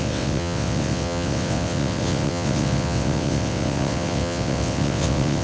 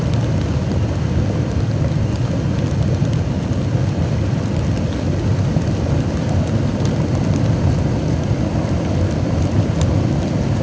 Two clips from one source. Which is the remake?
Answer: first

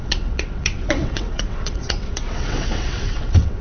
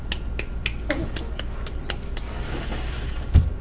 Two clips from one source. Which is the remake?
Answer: first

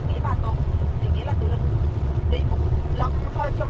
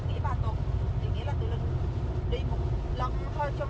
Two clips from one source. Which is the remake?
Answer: first